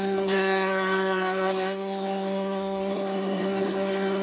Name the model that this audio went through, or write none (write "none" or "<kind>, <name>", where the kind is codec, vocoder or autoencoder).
codec, SNAC